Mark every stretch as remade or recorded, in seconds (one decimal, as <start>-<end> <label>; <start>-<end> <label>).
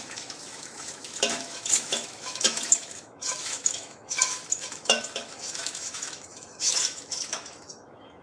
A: 0.0-8.2 remade